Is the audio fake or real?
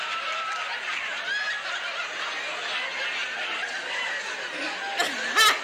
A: real